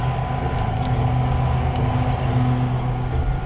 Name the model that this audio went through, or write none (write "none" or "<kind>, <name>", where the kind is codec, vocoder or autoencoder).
none